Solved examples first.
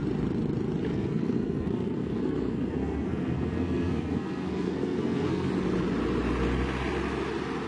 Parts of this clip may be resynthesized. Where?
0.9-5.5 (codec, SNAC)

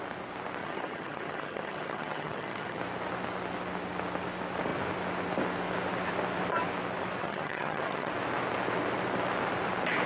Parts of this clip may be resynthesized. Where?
0.6-2.8 (vocoder, HiFi-GAN); 7.2-8.1

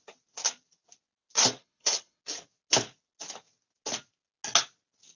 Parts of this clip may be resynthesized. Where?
1.6-2.2 (codec, HILCodec)